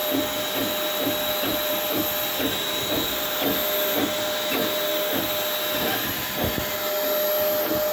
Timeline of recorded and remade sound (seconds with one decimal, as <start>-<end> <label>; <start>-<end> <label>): 0.0-7.9 recorded